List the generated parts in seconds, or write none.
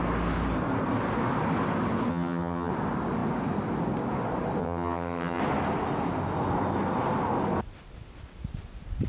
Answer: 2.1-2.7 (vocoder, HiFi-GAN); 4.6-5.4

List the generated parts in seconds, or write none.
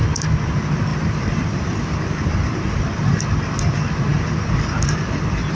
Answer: 0.9-2.8 (vocoder, BigVGAN v2)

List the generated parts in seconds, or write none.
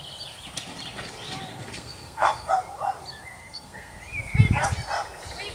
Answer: 1.5-2.5 (codec, SNAC); 3.4-4.0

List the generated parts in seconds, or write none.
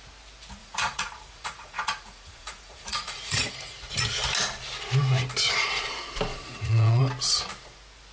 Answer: 0.6-4.0 (vocoder, Vocos); 6.3-7.0